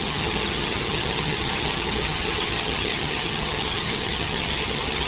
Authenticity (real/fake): fake